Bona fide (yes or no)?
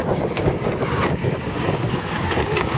no